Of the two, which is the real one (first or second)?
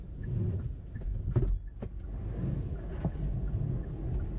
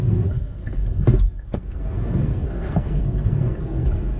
first